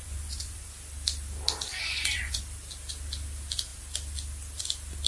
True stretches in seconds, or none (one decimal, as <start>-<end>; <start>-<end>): 0.7-1.7; 2.4-5.1